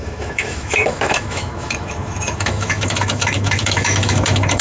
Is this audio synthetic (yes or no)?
yes